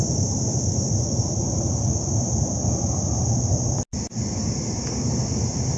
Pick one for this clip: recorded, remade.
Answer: recorded